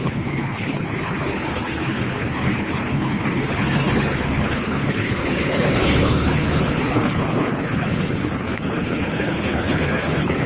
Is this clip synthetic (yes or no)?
yes